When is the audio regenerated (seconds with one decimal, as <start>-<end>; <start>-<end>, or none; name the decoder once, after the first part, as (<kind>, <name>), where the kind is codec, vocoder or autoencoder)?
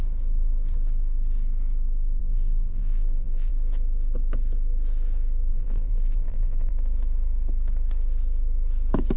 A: 2.2-3.5 (vocoder, BigVGAN v2); 5.5-6.7